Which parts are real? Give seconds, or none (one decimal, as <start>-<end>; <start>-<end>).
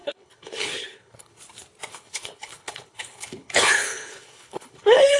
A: 1.4-1.9